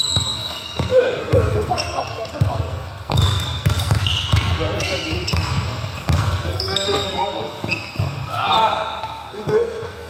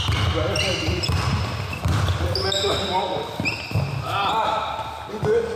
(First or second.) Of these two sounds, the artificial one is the first